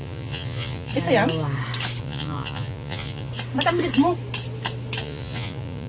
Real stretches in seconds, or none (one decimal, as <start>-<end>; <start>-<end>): 0.9-2.0; 3.3-5.0